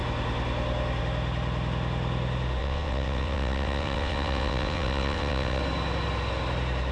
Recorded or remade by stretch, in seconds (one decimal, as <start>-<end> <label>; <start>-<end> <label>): 0.0-2.6 recorded; 2.6-5.6 remade; 5.6-6.9 recorded